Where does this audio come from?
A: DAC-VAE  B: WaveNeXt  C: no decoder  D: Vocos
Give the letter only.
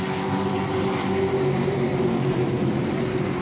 C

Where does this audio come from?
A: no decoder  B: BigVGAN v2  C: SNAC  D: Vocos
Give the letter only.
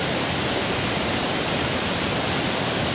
A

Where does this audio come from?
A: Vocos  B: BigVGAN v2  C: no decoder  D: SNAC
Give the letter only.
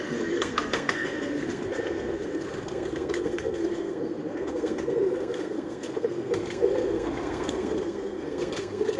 D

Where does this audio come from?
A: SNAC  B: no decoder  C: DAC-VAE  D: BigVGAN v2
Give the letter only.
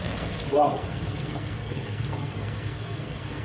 A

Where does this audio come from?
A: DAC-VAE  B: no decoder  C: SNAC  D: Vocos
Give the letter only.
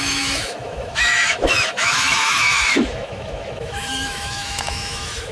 A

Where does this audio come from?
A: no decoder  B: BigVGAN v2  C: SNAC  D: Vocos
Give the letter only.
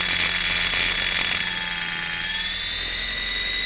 A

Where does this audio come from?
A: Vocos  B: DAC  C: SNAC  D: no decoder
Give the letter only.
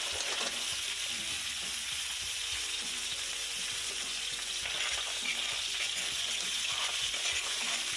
A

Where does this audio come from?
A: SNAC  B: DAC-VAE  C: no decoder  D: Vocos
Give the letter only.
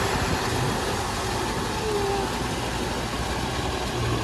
C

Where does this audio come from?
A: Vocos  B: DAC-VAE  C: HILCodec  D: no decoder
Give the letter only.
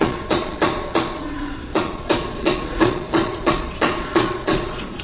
A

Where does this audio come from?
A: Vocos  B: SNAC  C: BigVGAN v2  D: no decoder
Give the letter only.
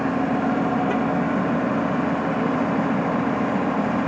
D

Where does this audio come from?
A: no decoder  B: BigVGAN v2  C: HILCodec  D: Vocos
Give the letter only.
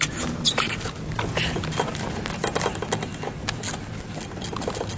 A